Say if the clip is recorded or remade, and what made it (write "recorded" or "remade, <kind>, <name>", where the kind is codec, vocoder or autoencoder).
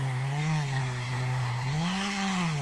remade, codec, SNAC